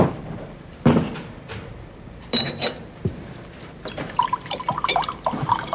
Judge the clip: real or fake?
fake